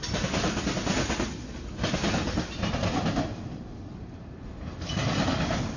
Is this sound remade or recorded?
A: recorded